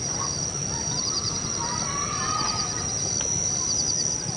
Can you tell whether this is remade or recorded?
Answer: recorded